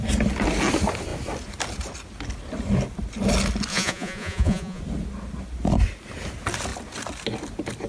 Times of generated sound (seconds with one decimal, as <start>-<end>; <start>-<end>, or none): 3.7-4.8